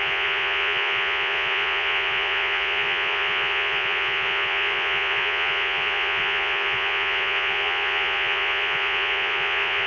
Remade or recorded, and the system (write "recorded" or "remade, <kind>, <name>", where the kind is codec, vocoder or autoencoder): remade, vocoder, Vocos